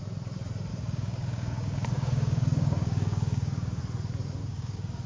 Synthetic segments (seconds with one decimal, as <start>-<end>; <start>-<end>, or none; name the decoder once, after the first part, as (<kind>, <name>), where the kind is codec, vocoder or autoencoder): 0.7-3.8 (codec, DAC); 4.4-5.1